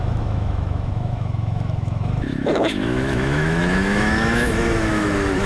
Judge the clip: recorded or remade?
remade